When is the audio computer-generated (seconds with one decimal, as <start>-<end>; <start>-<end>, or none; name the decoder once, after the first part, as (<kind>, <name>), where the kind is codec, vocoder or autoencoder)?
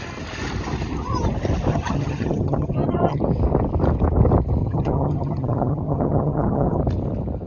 1.7-3.2 (vocoder, HiFi-GAN); 4.6-6.8